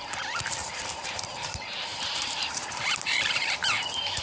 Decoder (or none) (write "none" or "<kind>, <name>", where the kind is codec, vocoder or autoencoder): vocoder, BigVGAN v2